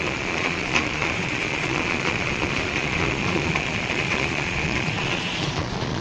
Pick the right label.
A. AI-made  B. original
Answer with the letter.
A